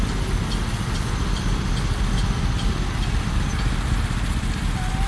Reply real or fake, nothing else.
real